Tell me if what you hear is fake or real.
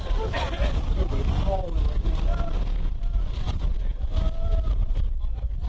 fake